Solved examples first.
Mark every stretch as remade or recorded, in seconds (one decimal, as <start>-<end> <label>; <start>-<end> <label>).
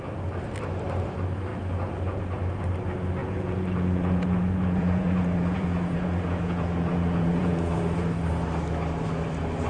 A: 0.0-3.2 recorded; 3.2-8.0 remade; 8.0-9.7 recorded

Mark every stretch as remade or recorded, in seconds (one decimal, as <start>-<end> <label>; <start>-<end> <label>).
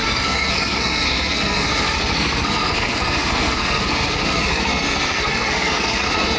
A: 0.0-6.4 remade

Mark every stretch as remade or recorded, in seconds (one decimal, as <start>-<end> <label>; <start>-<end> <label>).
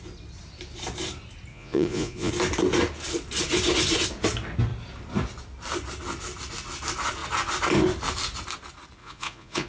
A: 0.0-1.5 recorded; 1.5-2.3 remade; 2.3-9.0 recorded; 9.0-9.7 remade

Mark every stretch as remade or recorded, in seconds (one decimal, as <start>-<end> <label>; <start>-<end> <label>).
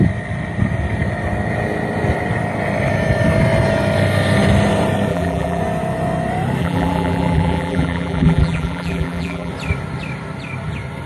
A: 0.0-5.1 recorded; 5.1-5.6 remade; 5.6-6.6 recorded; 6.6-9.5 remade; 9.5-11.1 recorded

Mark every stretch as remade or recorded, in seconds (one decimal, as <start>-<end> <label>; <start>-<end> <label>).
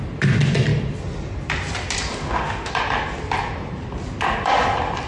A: 0.0-2.1 recorded; 2.1-2.7 remade; 2.7-5.1 recorded